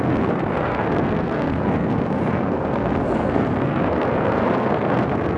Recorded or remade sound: remade